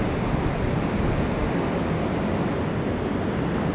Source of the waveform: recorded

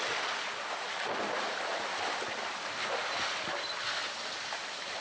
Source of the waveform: recorded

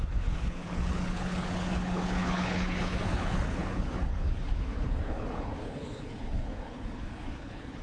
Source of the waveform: remade